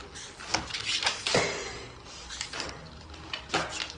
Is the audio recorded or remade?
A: recorded